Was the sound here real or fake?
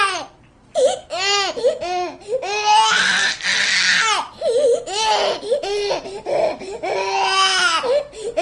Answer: real